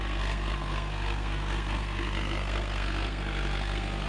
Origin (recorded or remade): remade